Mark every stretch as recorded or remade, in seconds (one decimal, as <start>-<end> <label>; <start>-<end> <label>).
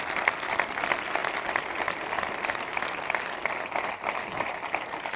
0.0-5.2 recorded